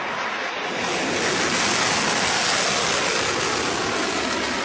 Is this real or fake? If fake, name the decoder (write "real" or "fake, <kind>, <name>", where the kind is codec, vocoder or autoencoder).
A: real